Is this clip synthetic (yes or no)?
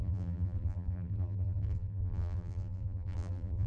yes